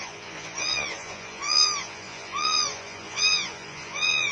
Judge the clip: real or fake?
fake